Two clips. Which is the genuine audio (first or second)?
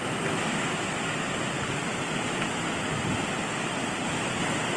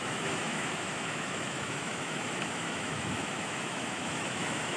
first